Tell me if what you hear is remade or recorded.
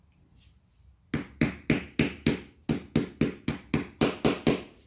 recorded